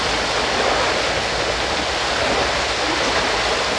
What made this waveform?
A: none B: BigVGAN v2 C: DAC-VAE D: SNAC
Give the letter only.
A